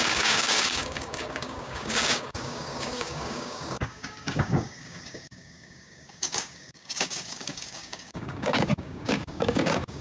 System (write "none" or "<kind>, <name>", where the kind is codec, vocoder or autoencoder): codec, DAC